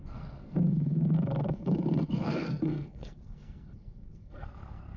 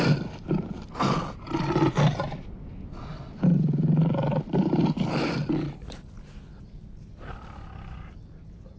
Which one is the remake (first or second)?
first